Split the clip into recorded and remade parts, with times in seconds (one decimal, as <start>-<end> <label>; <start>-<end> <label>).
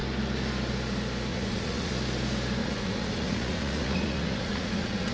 0.0-1.3 recorded; 1.3-1.9 remade; 1.9-2.6 recorded; 2.6-5.1 remade